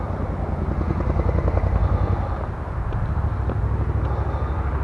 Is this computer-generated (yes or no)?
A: no